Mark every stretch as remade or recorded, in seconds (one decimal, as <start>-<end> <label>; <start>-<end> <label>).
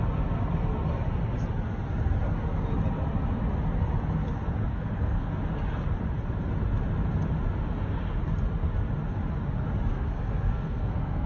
0.0-4.7 recorded; 4.7-5.3 remade; 5.3-9.9 recorded; 9.9-11.3 remade